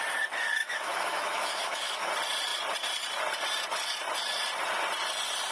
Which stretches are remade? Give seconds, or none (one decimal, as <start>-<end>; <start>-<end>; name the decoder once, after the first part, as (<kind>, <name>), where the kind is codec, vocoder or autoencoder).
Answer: 0.6-2.1 (autoencoder, DAC-VAE)